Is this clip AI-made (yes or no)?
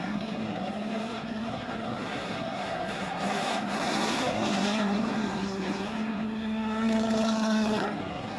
yes